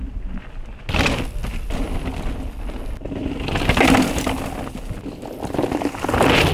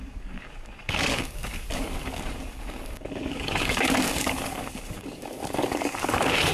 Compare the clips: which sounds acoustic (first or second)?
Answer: first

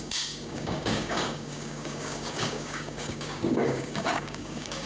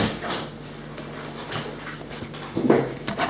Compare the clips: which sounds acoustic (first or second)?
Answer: second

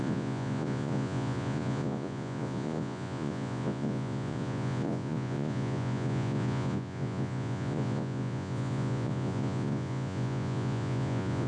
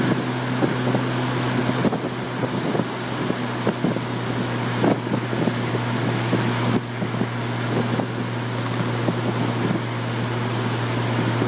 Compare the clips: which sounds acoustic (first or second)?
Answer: second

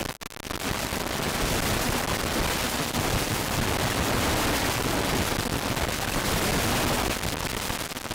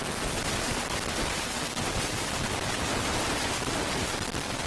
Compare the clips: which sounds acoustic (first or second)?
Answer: first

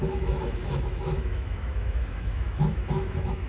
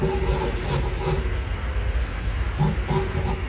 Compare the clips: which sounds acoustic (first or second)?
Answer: second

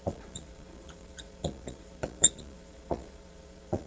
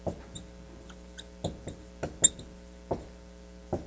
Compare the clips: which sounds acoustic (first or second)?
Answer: second